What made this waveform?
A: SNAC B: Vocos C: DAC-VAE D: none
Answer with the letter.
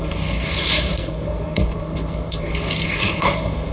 A